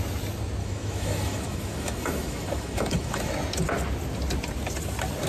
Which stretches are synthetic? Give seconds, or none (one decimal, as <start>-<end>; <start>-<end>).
0.6-3.3